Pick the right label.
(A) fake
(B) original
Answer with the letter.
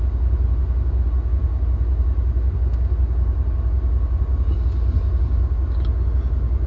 B